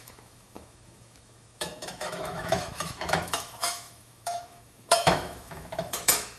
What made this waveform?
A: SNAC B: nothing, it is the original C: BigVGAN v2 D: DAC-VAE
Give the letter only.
D